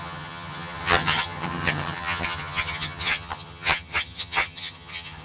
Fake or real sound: fake